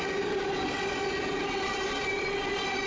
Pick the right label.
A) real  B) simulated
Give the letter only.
A